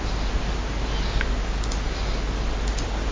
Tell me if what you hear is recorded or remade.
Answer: recorded